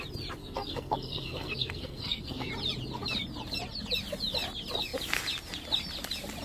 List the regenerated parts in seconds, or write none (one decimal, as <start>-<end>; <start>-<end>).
0.4-2.5